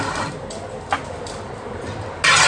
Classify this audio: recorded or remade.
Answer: recorded